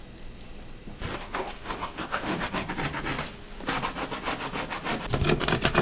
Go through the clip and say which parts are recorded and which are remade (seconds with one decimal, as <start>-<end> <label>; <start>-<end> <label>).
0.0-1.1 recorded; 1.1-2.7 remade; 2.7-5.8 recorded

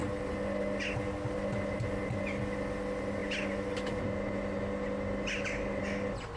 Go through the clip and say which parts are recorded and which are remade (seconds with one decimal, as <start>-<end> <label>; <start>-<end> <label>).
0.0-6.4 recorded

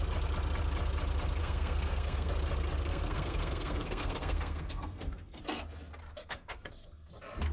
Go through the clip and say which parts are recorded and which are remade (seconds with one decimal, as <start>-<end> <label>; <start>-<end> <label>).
0.0-1.4 recorded; 1.4-2.3 remade; 2.3-2.9 recorded; 2.9-5.4 remade; 5.4-6.1 recorded; 6.1-7.1 remade; 7.1-7.5 recorded

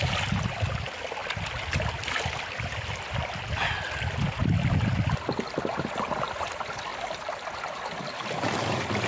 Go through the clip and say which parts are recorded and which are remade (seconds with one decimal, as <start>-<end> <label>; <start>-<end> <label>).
0.0-9.1 recorded

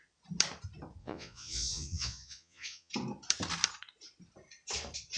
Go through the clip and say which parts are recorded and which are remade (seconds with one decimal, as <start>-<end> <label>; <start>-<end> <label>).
0.0-1.0 recorded; 1.0-2.9 remade; 2.9-5.2 recorded

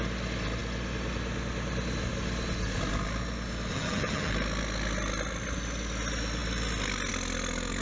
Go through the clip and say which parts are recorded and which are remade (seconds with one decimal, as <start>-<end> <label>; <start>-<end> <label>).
0.0-3.7 recorded; 3.7-4.3 remade; 4.3-7.8 recorded

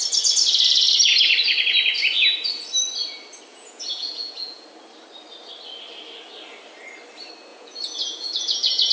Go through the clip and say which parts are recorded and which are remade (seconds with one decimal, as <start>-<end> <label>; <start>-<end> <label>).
0.0-3.5 recorded; 3.5-4.6 remade; 4.6-7.5 recorded; 7.5-8.9 remade

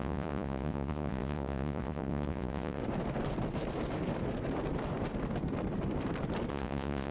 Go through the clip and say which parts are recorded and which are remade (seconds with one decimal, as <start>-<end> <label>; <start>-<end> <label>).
0.0-2.8 remade; 2.8-6.5 recorded; 6.5-7.1 remade